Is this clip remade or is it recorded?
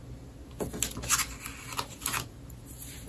recorded